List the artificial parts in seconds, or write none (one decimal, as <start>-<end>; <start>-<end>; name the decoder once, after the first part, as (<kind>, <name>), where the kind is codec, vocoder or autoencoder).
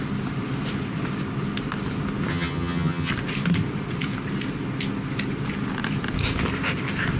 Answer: 2.3-3.1 (vocoder, HiFi-GAN)